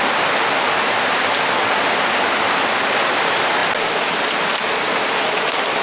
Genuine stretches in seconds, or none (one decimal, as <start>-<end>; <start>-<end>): 0.0-5.8